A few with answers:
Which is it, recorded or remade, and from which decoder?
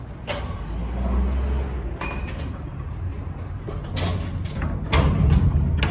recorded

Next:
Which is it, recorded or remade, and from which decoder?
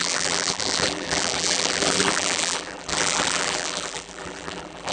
remade, vocoder, BigVGAN v2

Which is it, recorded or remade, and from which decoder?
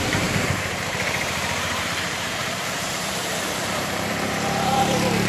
remade, vocoder, BigVGAN v2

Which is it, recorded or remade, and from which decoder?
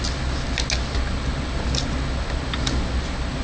recorded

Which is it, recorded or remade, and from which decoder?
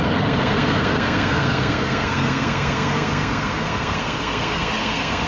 remade, codec, SNAC